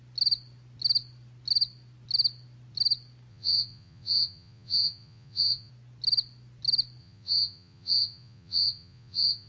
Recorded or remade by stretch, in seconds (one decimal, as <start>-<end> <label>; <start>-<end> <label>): 0.0-3.3 recorded; 3.3-5.7 remade; 5.7-7.0 recorded; 7.0-9.5 remade